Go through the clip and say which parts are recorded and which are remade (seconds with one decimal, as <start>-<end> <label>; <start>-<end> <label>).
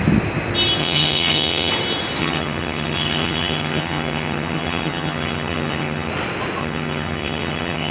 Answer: 0.0-0.8 recorded; 0.8-1.7 remade; 1.7-2.2 recorded; 2.2-6.1 remade; 6.1-6.6 recorded; 6.6-7.9 remade